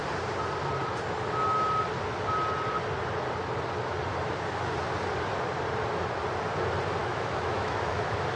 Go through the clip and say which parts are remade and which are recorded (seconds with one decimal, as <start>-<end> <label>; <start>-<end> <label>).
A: 0.0-7.0 recorded; 7.0-8.0 remade; 8.0-8.4 recorded